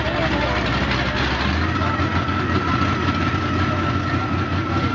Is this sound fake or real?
real